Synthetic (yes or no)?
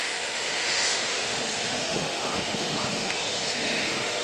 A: yes